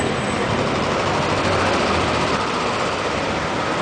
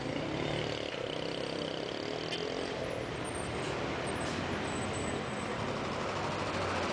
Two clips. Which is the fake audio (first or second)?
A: first